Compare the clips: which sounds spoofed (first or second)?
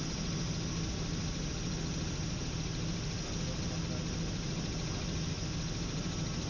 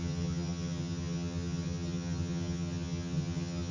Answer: second